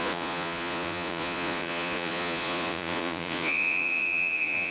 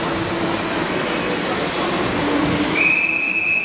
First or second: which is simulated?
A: first